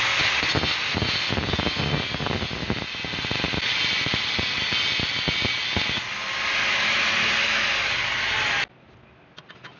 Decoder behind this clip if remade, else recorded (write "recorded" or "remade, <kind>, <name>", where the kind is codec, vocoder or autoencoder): recorded